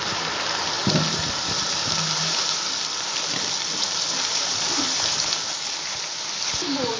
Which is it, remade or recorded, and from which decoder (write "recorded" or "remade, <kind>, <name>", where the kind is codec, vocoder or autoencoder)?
recorded